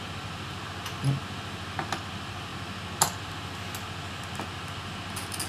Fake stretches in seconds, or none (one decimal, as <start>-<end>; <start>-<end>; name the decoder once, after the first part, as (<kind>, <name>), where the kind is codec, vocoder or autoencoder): none